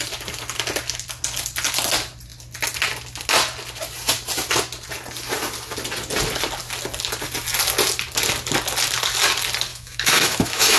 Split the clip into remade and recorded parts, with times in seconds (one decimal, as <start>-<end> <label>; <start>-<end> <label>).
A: 0.0-9.7 recorded; 9.7-10.8 remade